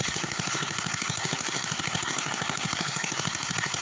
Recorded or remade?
remade